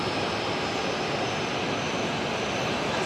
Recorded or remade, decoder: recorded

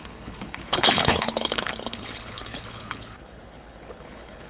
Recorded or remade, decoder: remade, codec, HILCodec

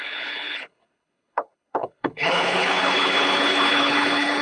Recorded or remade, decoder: remade, codec, HILCodec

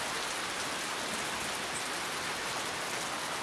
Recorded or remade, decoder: recorded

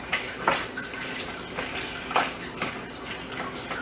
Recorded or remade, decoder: recorded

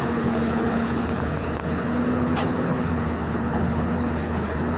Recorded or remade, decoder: remade, codec, HILCodec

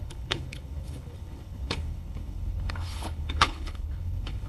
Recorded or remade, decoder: remade, codec, HILCodec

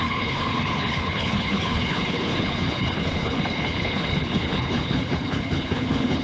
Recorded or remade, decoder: remade, codec, HILCodec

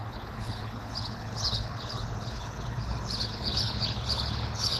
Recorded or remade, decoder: remade, codec, HILCodec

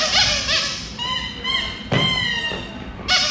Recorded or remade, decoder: recorded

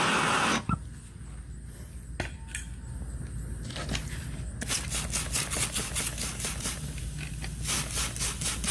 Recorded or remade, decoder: recorded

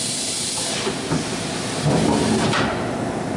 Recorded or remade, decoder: recorded